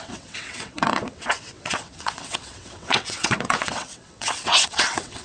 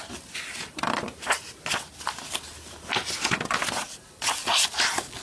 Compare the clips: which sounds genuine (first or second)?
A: second